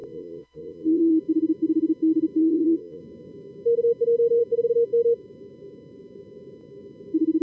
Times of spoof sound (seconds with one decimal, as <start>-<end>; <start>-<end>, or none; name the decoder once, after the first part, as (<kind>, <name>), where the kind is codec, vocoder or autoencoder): 0.0-1.1 (vocoder, Vocos); 2.4-3.0